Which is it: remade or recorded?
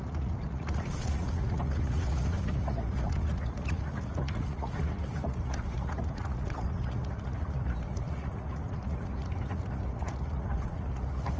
remade